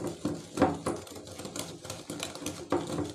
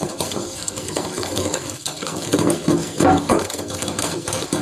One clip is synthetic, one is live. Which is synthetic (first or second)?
second